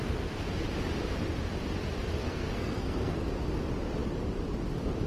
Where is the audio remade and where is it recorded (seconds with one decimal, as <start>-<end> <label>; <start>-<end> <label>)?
0.0-2.2 recorded; 2.2-3.3 remade; 3.3-5.1 recorded